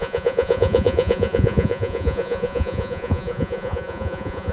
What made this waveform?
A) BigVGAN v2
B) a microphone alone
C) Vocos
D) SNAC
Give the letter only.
C